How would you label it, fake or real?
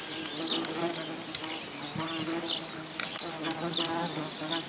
real